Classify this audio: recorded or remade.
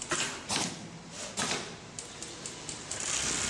recorded